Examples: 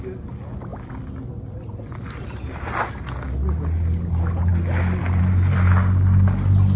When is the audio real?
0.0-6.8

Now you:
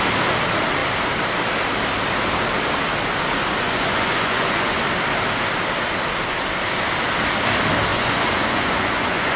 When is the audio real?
0.0-3.6; 4.8-7.9

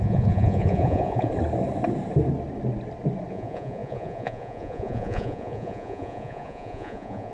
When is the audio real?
1.3-3.3

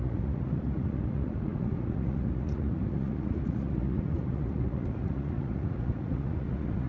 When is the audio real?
none

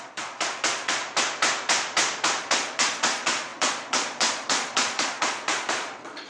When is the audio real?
1.0-2.4